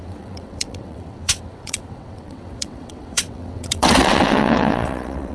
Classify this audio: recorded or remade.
remade